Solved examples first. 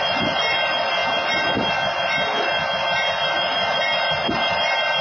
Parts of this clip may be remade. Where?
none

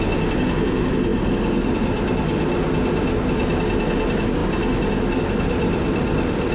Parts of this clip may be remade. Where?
none

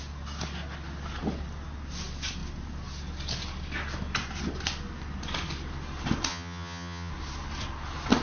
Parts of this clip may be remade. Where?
6.3-7.1

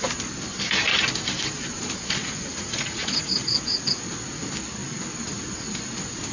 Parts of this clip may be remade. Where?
2.2-3.3